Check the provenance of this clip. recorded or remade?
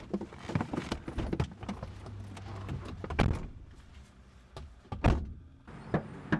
recorded